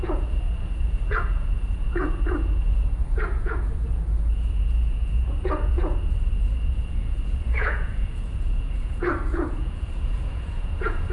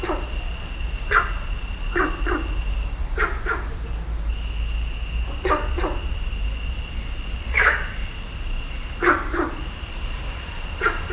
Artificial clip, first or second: first